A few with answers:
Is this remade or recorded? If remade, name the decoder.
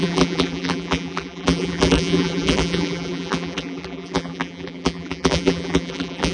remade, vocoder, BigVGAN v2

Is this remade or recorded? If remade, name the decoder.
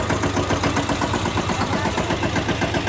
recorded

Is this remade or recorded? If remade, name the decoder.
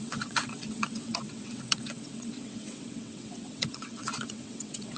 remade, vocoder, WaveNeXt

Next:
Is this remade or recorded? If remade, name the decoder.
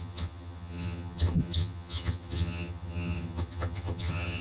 remade, vocoder, HiFi-GAN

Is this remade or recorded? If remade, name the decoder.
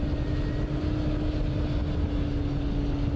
recorded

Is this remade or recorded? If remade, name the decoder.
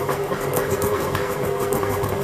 remade, codec, SNAC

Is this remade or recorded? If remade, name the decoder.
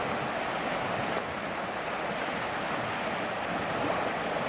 recorded